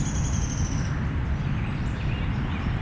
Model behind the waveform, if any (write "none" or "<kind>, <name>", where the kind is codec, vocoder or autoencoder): none